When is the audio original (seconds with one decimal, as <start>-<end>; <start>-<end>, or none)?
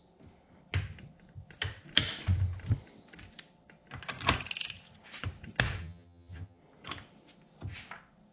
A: 0.0-5.8; 6.6-8.3